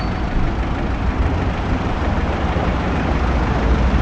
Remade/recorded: remade